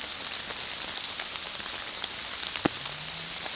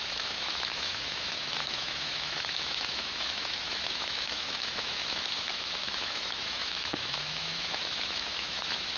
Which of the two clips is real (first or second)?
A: first